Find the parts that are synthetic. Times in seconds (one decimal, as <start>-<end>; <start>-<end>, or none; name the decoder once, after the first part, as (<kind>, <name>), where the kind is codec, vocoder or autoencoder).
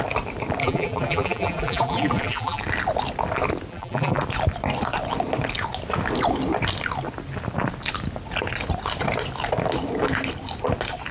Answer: 0.6-2.6 (vocoder, BigVGAN v2); 3.7-4.2